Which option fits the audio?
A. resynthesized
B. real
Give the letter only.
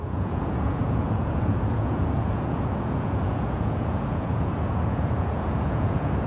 A